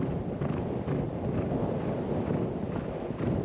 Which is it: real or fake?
real